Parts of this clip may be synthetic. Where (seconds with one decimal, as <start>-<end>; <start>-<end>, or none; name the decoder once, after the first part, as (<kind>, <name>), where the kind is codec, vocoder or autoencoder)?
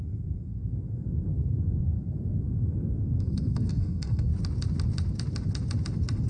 0.0-4.3 (codec, SNAC)